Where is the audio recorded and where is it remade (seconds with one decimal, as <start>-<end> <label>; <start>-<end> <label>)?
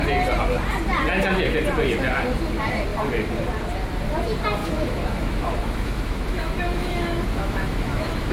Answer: 0.0-4.6 recorded; 4.6-8.3 remade